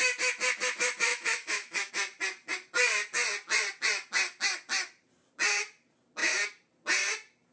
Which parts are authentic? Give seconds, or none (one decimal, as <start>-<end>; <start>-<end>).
0.0-1.1; 1.9-7.5